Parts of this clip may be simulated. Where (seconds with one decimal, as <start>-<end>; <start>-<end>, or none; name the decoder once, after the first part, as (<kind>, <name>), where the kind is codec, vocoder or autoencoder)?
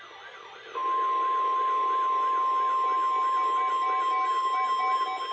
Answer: none